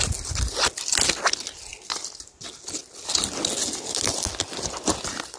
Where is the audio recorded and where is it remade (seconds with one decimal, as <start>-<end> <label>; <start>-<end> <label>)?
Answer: 0.0-5.4 recorded